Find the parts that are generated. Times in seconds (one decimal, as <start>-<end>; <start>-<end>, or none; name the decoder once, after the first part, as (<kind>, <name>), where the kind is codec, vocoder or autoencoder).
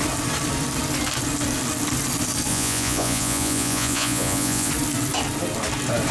2.5-4.7 (vocoder, Vocos)